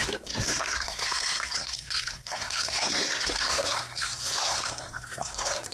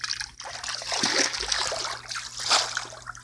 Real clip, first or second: second